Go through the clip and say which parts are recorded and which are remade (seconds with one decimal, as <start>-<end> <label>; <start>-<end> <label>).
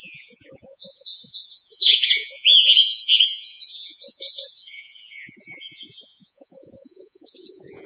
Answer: 0.0-7.9 remade